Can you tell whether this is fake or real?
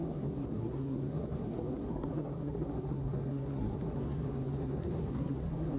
fake